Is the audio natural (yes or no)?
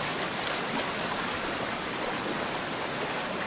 yes